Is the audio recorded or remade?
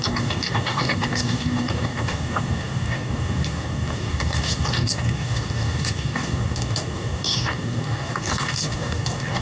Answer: remade